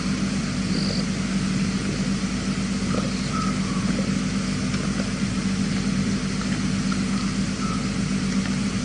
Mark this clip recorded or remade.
recorded